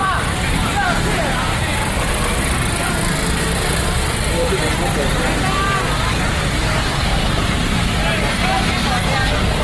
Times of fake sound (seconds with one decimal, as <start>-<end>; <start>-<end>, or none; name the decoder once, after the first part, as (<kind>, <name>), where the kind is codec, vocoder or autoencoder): 0.0-2.0 (vocoder, BigVGAN v2); 3.2-4.6

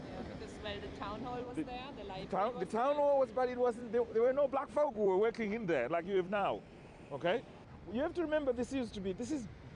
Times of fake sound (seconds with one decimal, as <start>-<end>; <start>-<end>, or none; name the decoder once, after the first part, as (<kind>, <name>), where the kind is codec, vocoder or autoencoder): 0.5-1.5 (vocoder, BigVGAN v2); 3.8-7.0

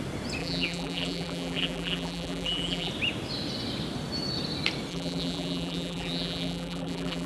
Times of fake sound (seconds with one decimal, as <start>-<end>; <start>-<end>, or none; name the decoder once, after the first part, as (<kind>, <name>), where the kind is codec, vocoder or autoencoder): 0.4-2.9 (vocoder, BigVGAN v2); 4.9-7.3

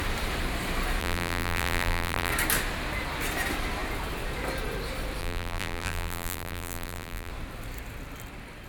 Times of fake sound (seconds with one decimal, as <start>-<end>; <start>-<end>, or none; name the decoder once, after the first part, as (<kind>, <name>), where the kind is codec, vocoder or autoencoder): 1.0-2.3 (vocoder, BigVGAN v2); 5.2-7.3

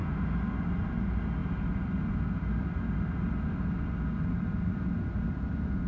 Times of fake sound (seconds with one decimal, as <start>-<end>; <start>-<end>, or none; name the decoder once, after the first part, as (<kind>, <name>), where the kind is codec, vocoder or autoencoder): none